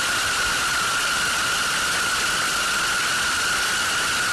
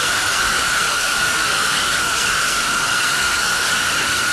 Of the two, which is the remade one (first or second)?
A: second